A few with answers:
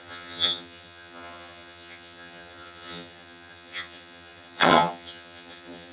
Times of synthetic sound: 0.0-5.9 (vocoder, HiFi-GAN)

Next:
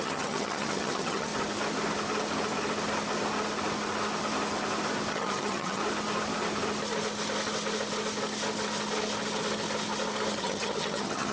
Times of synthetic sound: 0.0-1.3 (vocoder, HiFi-GAN); 5.1-5.8; 10.3-11.3

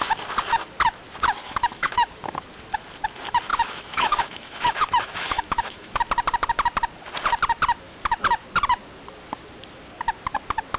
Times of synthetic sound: 1.4-2.1 (autoencoder, DAC-VAE); 3.5-6.0

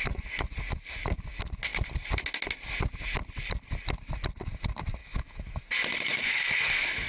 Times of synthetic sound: 5.0-5.6 (autoencoder, DAC-VAE); 6.1-7.1

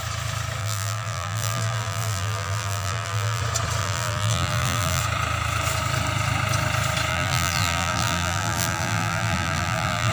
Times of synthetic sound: 0.6-3.4 (vocoder, BigVGAN v2); 3.8-5.0; 7.1-10.1

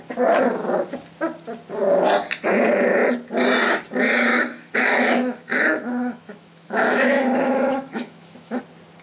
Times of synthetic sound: 4.3-8.6 (autoencoder, DAC-VAE)